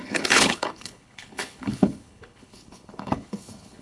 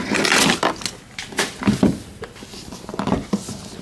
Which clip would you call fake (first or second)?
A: first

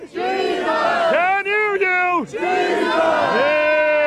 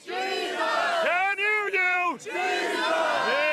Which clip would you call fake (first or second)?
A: second